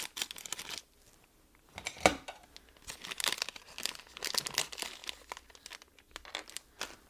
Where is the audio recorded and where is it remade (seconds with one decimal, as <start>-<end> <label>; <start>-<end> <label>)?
0.0-7.1 recorded